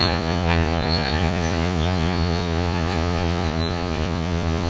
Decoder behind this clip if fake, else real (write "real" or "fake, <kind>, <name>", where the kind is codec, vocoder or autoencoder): fake, vocoder, Vocos